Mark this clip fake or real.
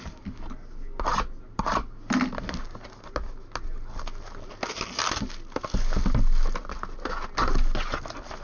real